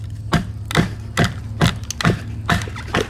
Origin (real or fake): real